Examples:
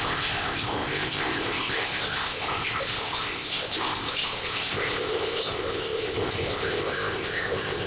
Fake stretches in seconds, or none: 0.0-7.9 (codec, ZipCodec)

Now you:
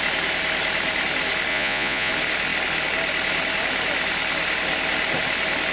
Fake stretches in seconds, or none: 1.5-2.1 (vocoder, Vocos)